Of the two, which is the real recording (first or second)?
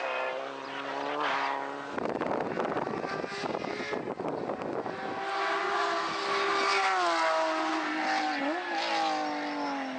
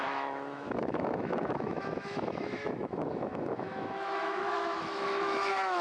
first